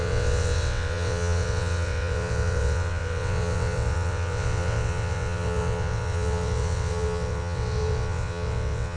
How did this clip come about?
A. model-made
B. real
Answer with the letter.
A